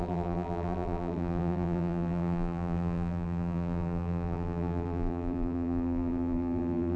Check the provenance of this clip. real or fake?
fake